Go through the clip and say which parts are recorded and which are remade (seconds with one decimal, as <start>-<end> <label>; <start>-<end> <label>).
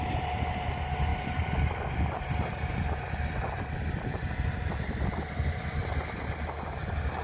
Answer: 0.0-1.1 remade; 1.1-4.8 recorded; 4.8-5.8 remade; 5.8-7.2 recorded